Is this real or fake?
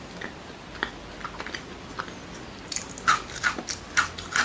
real